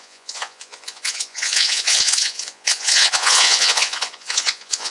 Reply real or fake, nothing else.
fake